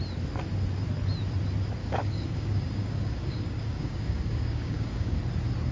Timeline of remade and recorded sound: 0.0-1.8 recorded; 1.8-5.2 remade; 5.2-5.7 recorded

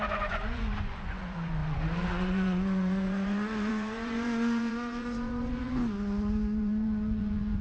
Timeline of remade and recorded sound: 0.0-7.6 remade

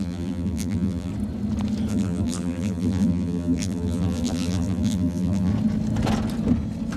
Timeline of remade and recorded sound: 0.0-1.1 remade; 1.1-1.9 recorded; 1.9-5.5 remade; 5.5-7.0 recorded